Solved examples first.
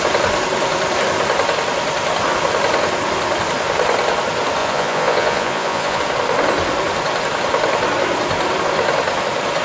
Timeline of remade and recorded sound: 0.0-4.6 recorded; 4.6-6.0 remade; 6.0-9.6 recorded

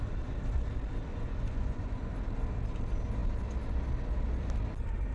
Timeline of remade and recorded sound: 0.0-1.1 recorded; 1.1-2.1 remade; 2.1-5.1 recorded